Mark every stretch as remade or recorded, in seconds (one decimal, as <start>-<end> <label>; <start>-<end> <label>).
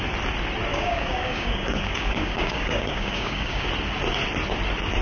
0.0-0.7 recorded; 0.7-3.7 remade; 3.7-5.0 recorded